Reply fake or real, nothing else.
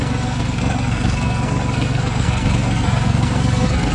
fake